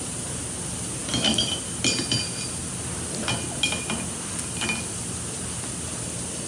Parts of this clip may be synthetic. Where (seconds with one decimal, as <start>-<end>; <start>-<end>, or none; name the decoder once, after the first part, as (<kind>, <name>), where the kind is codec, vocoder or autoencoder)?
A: none